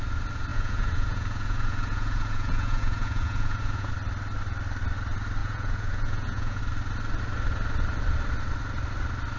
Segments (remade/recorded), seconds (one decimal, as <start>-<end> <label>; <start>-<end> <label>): 0.0-0.5 recorded; 0.5-3.9 remade; 3.9-5.4 recorded; 5.4-6.6 remade; 6.6-9.4 recorded